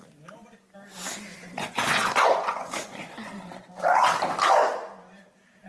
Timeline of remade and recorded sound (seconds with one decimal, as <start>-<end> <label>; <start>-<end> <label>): 0.0-1.3 recorded; 1.3-3.3 remade; 3.3-5.7 recorded